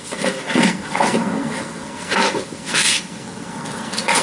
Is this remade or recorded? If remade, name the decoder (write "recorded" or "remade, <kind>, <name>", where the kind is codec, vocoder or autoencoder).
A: remade, codec, SNAC